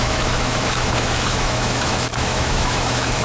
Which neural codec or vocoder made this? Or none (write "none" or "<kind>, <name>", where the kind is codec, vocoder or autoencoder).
autoencoder, DAC-VAE